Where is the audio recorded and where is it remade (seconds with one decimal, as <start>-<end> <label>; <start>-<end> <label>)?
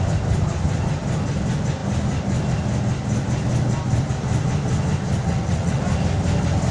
0.0-5.2 recorded; 5.2-5.8 remade; 5.8-6.7 recorded